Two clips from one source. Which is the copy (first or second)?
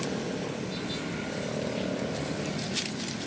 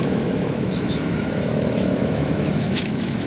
second